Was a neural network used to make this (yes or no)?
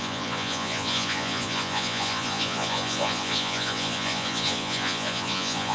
yes